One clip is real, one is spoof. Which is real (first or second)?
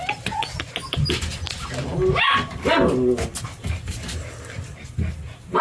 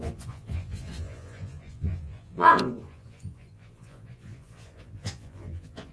first